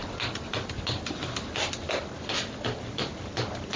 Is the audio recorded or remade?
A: recorded